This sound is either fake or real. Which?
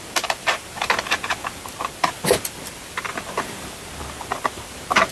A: fake